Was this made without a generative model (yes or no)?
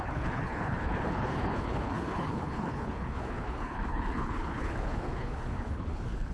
no